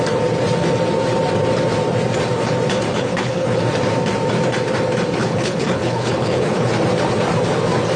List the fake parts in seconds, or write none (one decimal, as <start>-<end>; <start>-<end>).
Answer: 2.9-3.6; 5.2-6.7